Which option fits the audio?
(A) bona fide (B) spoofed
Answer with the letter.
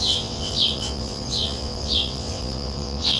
B